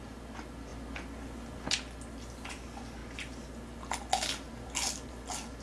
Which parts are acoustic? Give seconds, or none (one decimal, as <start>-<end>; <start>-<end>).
0.0-5.6

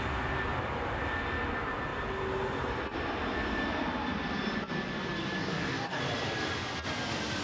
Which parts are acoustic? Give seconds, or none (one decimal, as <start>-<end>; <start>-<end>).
0.0-5.4; 6.0-7.4

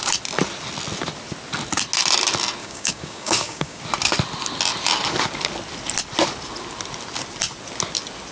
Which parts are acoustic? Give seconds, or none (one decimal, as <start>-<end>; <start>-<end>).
0.0-2.6; 3.8-8.3

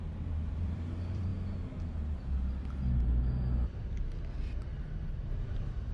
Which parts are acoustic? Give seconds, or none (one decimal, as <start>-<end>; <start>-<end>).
1.3-4.8